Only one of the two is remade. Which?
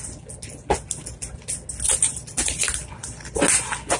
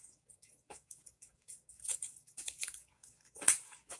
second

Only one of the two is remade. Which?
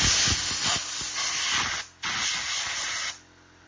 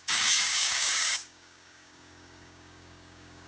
second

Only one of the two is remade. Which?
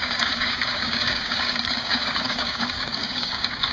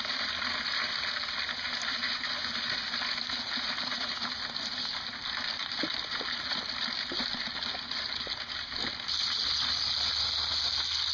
first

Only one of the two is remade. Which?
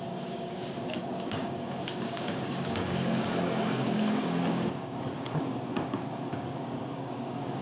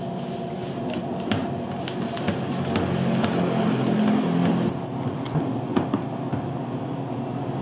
first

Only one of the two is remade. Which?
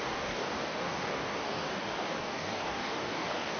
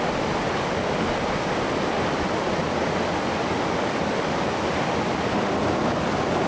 first